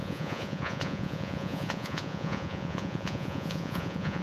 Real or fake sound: fake